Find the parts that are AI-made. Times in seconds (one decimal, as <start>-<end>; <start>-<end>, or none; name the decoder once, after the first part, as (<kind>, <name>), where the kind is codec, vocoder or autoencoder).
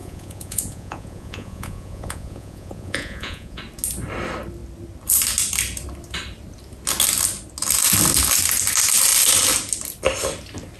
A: 0.0-3.6 (vocoder, Vocos)